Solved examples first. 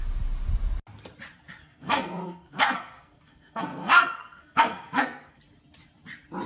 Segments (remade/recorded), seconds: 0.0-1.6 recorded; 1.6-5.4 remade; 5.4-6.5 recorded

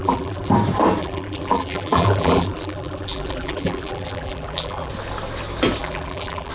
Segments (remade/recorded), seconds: 0.0-0.5 remade; 0.5-1.0 recorded; 1.0-4.9 remade; 4.9-5.8 recorded; 5.8-6.5 remade

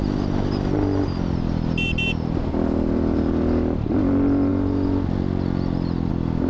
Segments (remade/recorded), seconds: 0.0-6.5 recorded

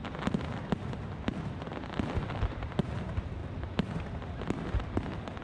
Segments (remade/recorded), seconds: 0.0-3.4 recorded; 3.4-4.0 remade; 4.0-5.4 recorded

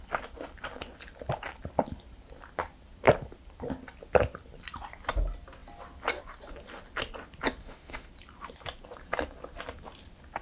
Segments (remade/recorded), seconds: 0.0-7.6 recorded; 7.6-8.1 remade; 8.1-10.4 recorded